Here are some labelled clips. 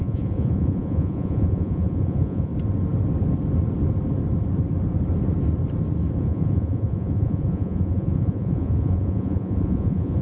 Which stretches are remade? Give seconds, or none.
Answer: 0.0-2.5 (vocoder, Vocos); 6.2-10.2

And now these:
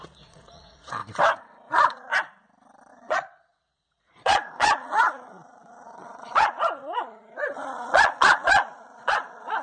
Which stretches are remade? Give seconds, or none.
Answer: 0.0-1.0 (vocoder, Vocos); 1.7-2.1; 2.9-9.6